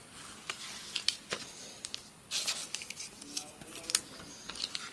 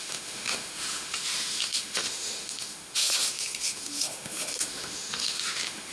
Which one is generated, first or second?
second